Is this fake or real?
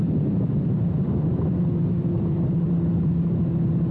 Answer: fake